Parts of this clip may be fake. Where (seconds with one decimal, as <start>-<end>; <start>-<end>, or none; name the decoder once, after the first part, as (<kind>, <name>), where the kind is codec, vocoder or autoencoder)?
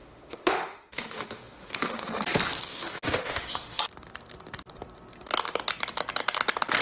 0.0-2.1 (autoencoder, DAC-VAE); 2.7-3.8